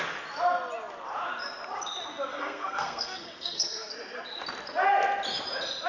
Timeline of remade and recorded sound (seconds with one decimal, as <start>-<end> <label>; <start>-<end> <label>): 0.0-2.3 recorded; 2.3-3.9 remade; 3.9-5.9 recorded

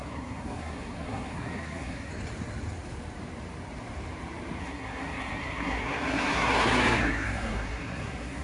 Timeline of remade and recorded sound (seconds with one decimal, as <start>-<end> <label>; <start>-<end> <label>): 0.0-2.1 remade; 2.1-4.6 recorded; 4.6-8.4 remade

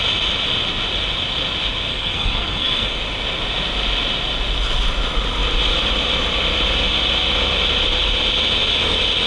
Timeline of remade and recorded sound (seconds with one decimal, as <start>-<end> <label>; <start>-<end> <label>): 0.0-1.9 recorded; 1.9-3.0 remade; 3.0-9.3 recorded

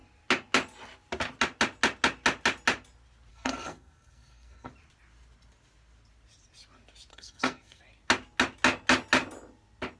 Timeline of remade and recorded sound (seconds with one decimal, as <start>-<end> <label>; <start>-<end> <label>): 0.0-3.3 recorded; 3.3-4.7 remade; 4.7-7.1 recorded; 7.1-7.8 remade; 7.8-10.0 recorded

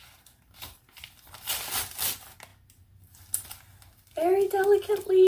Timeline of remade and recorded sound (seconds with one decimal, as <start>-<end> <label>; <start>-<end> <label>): 0.0-5.3 recorded

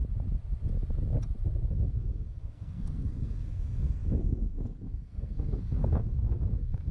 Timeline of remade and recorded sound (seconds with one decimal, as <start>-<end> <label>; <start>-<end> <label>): 0.0-1.7 recorded; 1.7-6.9 remade